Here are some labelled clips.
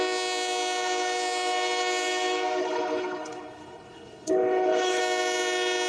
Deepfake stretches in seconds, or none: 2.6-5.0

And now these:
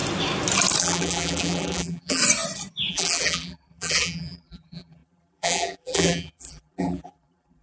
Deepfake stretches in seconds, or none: 0.8-2.2; 2.9-7.6

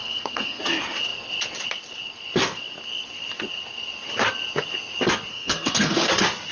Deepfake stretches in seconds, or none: 0.0-0.6; 5.3-6.1

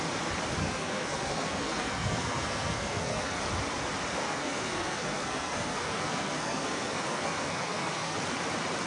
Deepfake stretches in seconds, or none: 0.6-3.4; 4.2-8.2

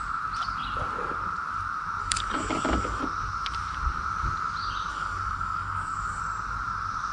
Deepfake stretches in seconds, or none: 2.0-3.0; 4.9-6.2

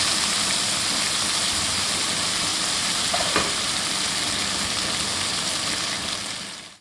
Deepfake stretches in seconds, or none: 2.5-3.8

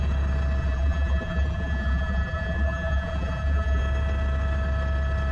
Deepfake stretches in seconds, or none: 0.6-3.8

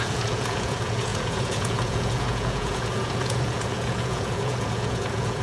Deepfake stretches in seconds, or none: 0.0-5.4